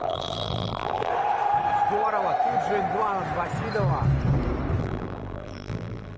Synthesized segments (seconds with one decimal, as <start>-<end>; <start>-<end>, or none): 0.0-1.1; 4.8-6.2